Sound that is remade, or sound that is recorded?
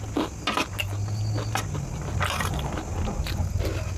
recorded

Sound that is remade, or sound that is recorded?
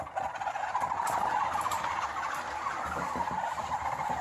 recorded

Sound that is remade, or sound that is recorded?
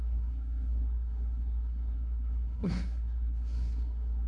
remade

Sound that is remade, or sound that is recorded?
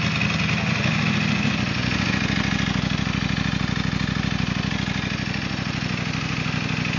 recorded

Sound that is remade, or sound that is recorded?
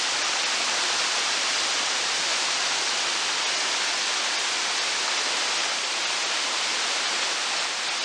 recorded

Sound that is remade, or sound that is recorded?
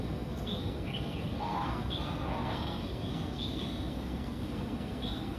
remade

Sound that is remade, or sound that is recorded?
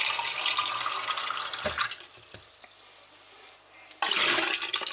recorded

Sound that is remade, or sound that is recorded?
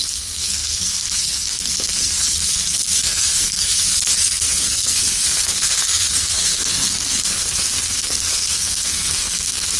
remade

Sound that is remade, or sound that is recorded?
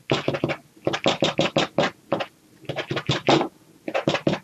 recorded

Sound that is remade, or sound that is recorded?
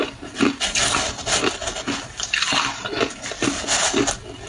recorded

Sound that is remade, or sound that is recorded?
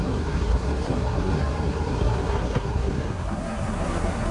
remade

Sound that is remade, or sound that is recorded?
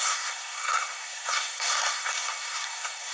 remade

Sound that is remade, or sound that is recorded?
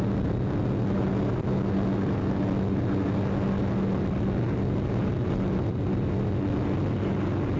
recorded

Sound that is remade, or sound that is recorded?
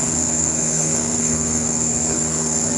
remade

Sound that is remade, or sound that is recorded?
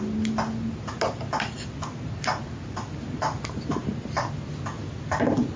recorded